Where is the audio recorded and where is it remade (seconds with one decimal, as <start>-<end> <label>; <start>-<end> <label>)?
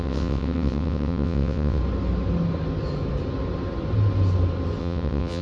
0.0-1.8 remade; 1.8-4.8 recorded; 4.8-5.4 remade